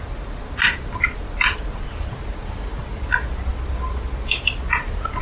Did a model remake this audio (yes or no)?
no